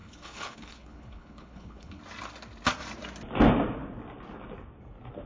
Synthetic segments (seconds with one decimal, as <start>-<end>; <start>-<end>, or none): 0.0-2.0